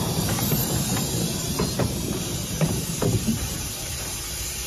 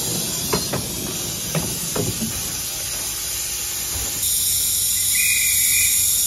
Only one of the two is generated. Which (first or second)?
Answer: first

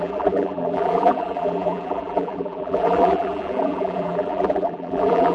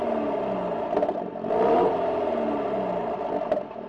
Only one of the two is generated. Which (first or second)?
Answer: first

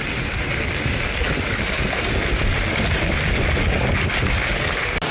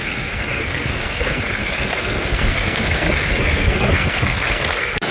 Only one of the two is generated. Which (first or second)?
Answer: second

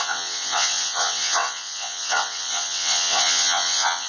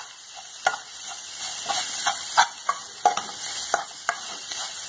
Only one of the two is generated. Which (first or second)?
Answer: first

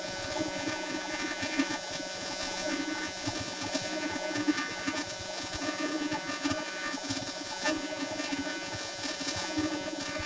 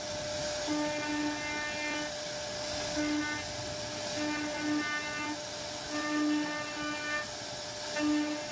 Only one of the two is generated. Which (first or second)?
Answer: first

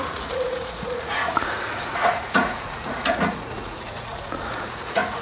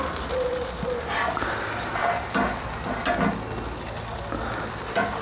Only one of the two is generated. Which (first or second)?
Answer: first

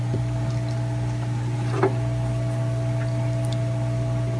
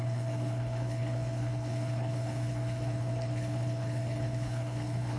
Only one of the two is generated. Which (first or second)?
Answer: second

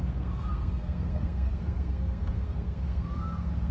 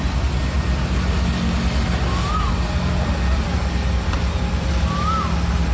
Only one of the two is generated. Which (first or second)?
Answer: first